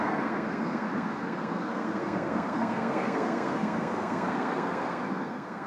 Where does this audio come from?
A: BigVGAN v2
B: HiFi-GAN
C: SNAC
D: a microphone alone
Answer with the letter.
C